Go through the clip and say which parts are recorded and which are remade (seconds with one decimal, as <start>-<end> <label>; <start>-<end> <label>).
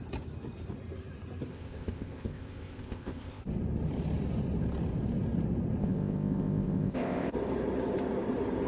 0.0-1.5 recorded; 1.5-3.4 remade; 3.4-5.8 recorded; 5.8-7.3 remade; 7.3-8.7 recorded